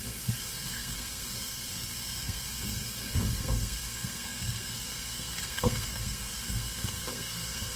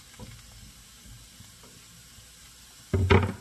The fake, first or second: first